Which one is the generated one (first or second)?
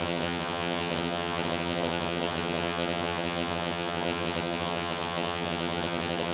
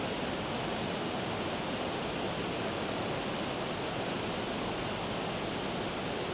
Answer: first